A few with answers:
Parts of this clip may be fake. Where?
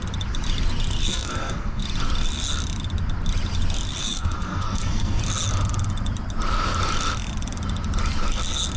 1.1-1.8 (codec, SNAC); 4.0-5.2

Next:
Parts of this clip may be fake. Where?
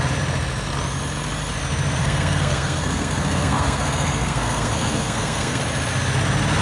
2.0-5.6 (codec, SNAC)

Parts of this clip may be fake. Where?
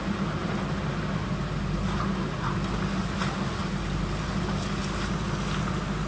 none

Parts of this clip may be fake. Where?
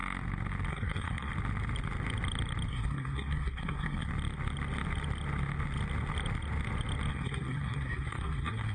0.7-1.3 (codec, SNAC); 2.7-4.1; 7.1-8.7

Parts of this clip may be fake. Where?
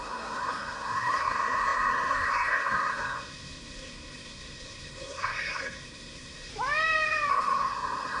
0.0-6.5 (codec, SNAC); 7.3-8.2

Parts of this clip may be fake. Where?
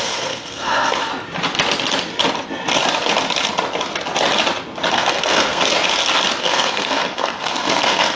0.0-1.1 (codec, SNAC); 4.9-5.7; 6.4-8.2